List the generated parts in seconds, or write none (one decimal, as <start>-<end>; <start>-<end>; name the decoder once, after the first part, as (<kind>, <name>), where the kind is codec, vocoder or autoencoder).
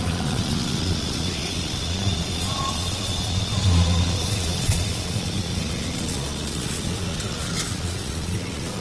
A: 0.0-8.8 (vocoder, Vocos)